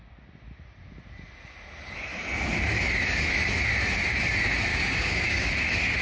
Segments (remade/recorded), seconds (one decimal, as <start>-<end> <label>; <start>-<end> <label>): 0.0-4.7 recorded; 4.7-5.5 remade; 5.5-6.0 recorded

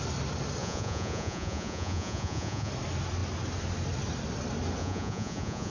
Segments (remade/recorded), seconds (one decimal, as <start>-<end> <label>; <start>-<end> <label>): 0.0-0.6 recorded; 0.6-2.7 remade; 2.7-4.8 recorded; 4.8-5.7 remade

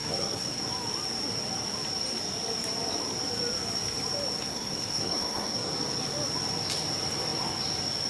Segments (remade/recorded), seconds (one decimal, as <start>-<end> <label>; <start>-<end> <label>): 0.0-0.6 remade; 0.6-4.4 recorded; 4.4-5.7 remade; 5.7-8.1 recorded

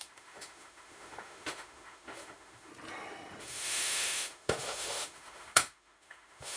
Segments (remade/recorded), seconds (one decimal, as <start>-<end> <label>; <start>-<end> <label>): 0.0-2.7 remade; 2.7-3.4 recorded; 3.4-6.6 remade

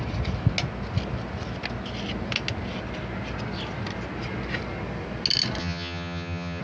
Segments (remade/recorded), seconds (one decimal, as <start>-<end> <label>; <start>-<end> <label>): 0.0-5.6 recorded; 5.6-6.6 remade

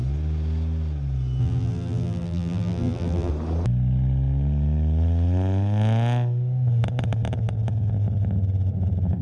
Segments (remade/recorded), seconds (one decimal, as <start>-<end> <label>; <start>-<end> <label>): 0.0-1.4 recorded; 1.4-3.3 remade; 3.3-9.2 recorded

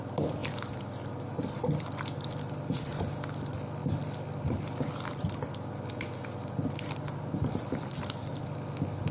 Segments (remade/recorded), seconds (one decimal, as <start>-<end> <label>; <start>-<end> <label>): 0.0-9.1 recorded

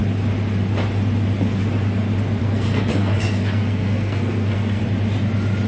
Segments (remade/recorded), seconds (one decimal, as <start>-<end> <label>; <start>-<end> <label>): 0.0-2.4 recorded; 2.4-4.8 remade; 4.8-5.7 recorded